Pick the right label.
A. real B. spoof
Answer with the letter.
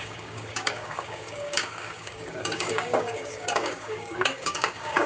B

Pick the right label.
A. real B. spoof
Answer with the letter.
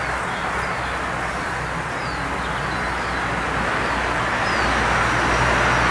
A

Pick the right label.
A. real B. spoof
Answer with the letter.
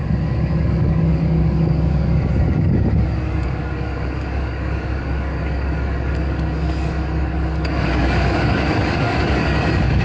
B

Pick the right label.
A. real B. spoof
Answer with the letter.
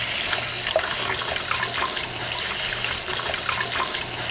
A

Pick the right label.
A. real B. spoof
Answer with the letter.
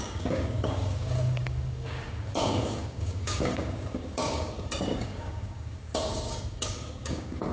B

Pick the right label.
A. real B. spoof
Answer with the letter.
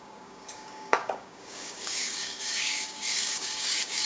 B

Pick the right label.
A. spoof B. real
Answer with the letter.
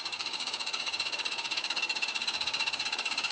A